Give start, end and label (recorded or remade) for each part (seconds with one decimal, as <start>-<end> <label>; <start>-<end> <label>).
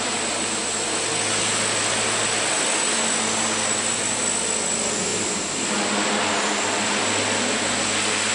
0.0-5.1 recorded; 5.1-5.7 remade; 5.7-8.3 recorded